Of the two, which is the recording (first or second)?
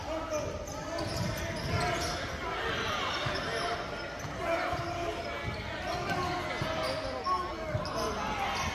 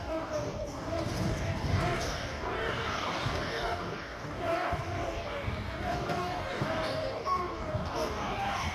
first